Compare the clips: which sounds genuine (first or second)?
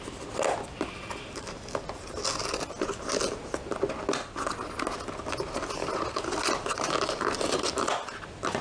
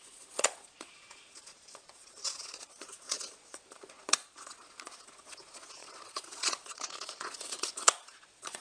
first